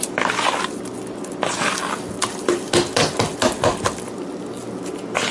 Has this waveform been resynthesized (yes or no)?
no